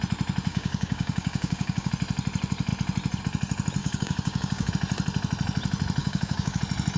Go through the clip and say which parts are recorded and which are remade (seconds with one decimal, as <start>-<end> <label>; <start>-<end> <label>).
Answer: 0.0-0.5 recorded; 0.5-1.9 remade; 1.9-3.8 recorded; 3.8-4.7 remade; 4.7-6.0 recorded; 6.0-6.6 remade; 6.6-7.0 recorded